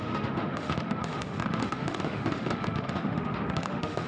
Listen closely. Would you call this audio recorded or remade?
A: remade